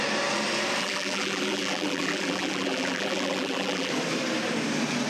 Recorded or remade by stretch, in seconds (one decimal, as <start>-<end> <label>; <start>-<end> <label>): 0.0-0.8 recorded; 0.8-3.9 remade; 3.9-5.1 recorded